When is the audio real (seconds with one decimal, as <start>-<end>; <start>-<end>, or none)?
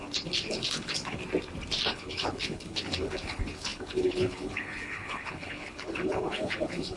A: 1.2-1.9